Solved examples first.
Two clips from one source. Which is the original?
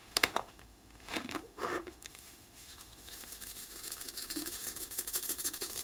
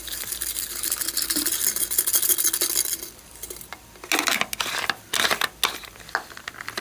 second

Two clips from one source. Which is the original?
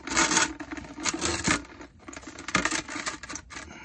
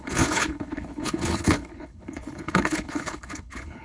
first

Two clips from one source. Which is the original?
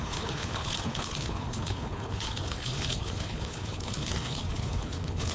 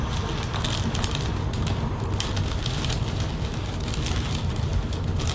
second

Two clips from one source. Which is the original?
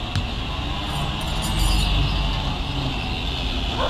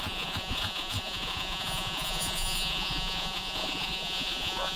first